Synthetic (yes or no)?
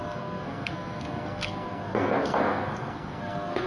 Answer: yes